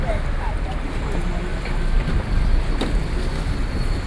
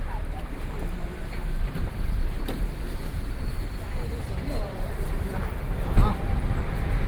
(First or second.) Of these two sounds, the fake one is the second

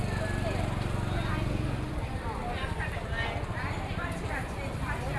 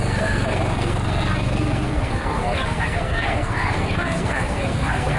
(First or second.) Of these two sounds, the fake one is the second